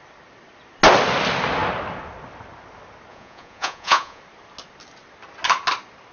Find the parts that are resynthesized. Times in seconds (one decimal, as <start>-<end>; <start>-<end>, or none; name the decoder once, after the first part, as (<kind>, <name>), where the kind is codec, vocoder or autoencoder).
3.1-4.2 (vocoder, Vocos)